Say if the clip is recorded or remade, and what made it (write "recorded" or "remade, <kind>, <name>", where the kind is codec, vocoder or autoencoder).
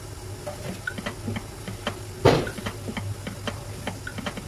recorded